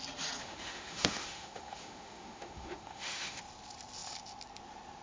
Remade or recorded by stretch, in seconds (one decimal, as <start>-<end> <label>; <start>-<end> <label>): 0.0-0.4 recorded; 0.4-3.4 remade; 3.4-5.0 recorded